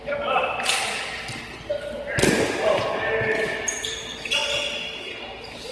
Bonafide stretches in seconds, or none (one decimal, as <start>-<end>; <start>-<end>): 0.0-5.7